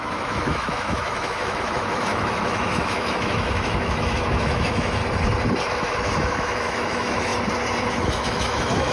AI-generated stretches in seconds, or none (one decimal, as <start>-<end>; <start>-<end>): 0.0-5.0; 5.7-7.3; 7.9-8.9